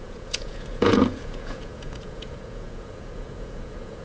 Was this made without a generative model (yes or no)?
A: no